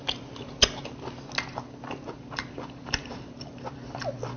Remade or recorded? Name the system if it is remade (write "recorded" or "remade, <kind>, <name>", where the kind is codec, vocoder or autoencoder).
recorded